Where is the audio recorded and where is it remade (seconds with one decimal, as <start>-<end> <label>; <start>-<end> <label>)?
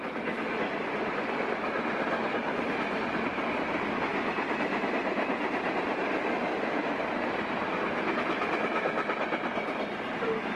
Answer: 0.0-10.6 recorded